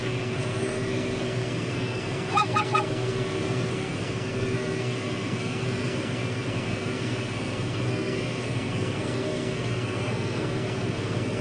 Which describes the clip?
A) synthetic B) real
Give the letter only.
A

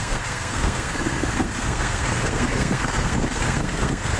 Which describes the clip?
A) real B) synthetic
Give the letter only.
B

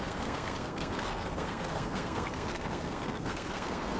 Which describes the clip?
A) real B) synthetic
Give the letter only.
B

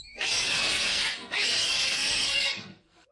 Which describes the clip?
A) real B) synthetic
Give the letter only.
B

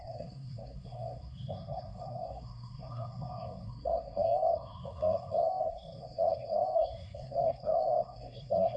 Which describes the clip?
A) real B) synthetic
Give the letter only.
B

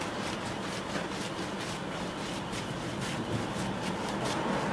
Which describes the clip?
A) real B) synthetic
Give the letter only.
A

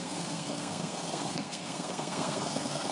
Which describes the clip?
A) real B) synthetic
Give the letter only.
B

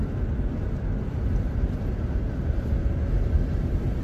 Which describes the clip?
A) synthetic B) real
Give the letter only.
B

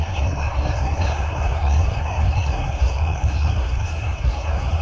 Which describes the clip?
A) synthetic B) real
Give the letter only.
A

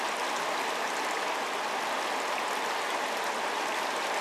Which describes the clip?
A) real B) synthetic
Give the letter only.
A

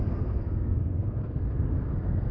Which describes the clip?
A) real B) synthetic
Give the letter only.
B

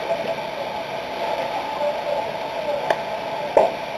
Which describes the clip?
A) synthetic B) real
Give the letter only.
B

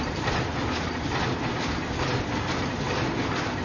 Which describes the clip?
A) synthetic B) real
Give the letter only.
B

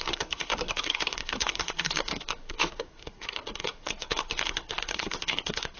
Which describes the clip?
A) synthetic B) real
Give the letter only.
A